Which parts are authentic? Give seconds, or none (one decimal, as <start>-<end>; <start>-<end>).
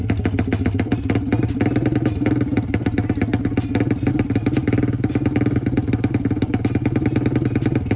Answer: 0.0-8.0